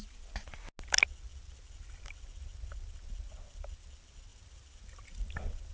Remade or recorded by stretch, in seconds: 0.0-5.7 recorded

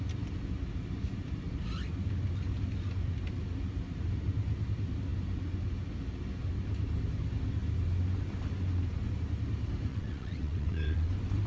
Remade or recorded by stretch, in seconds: 0.0-9.9 recorded; 9.9-11.1 remade; 11.1-11.5 recorded